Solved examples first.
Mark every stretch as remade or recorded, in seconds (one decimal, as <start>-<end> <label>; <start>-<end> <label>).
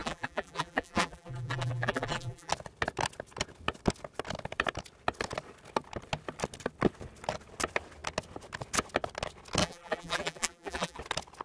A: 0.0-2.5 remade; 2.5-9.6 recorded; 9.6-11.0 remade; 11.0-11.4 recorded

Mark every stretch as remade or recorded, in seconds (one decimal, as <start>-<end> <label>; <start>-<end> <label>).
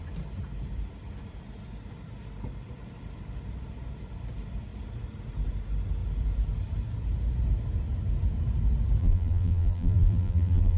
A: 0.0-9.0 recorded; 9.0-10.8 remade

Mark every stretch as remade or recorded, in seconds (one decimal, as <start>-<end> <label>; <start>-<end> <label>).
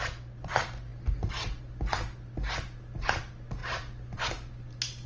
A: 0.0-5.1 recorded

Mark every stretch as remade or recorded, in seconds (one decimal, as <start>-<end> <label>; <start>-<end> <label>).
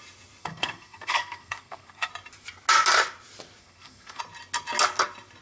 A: 0.0-0.4 recorded; 0.4-2.1 remade; 2.1-3.6 recorded; 3.6-4.2 remade; 4.2-5.4 recorded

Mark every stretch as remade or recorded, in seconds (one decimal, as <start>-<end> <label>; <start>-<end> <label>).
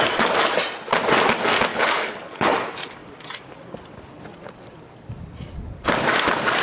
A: 0.0-1.7 recorded; 1.7-2.5 remade; 2.5-6.6 recorded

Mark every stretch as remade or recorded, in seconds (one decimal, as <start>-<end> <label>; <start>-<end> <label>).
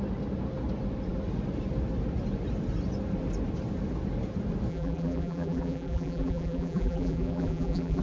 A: 0.0-4.7 recorded; 4.7-8.0 remade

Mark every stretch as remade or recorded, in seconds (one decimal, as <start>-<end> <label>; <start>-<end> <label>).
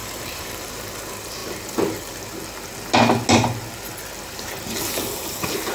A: 0.0-0.7 remade; 0.7-5.7 recorded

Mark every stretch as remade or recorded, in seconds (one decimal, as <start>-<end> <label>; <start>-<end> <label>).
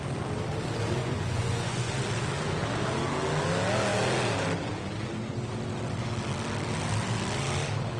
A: 0.0-1.0 recorded; 1.0-1.9 remade; 1.9-8.0 recorded